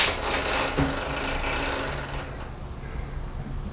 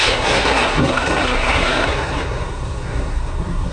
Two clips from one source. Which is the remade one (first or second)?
second